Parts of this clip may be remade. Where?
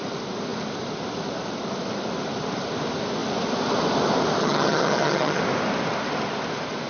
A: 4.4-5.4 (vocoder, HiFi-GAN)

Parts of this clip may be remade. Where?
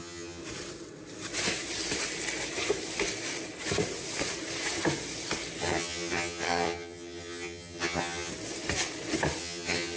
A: 0.0-0.4 (vocoder, HiFi-GAN); 5.6-8.3; 9.4-10.0